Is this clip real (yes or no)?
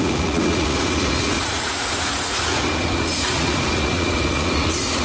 no